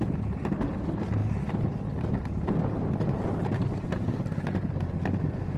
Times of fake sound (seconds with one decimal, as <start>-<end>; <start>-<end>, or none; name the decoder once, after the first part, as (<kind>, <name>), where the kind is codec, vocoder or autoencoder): none